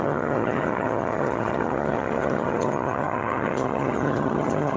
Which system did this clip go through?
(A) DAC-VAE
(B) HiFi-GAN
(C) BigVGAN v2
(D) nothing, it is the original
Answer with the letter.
B